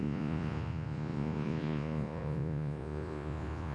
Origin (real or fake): fake